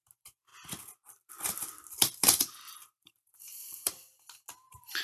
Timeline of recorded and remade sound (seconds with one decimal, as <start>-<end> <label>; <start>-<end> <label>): 0.0-2.8 recorded; 2.8-3.9 remade; 3.9-5.0 recorded